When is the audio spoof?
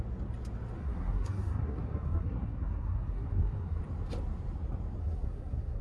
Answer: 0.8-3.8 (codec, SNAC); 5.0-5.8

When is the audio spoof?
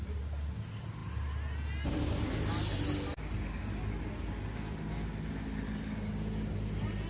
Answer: none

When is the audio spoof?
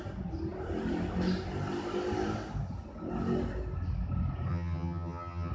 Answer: 4.5-5.5 (vocoder, HiFi-GAN)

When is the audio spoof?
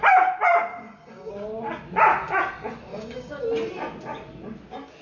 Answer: 0.7-1.3 (codec, DAC); 2.9-3.4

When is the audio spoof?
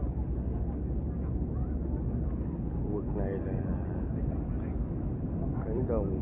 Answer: 3.6-6.2 (vocoder, BigVGAN v2)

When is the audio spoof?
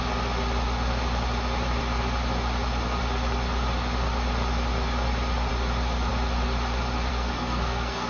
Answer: 7.1-8.1 (codec, SNAC)